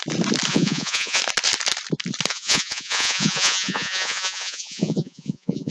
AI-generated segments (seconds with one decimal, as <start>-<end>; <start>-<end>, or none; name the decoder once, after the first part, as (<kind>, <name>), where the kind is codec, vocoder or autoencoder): 0.5-1.2 (vocoder, Vocos); 2.3-5.7